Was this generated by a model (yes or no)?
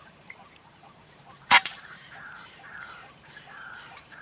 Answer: yes